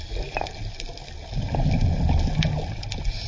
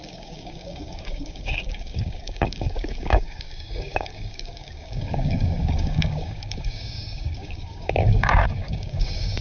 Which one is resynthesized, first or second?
second